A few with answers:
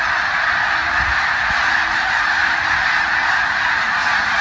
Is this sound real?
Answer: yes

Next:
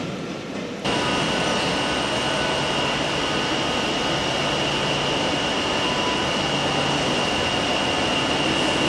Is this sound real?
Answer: yes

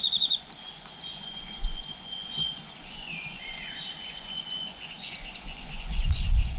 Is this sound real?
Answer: no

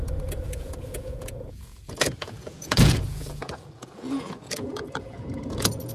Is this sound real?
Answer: no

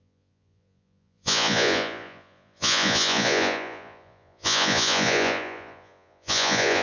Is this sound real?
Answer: no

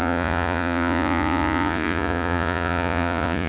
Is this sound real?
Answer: no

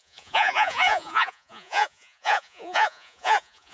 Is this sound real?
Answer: no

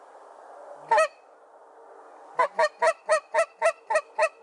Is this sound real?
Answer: yes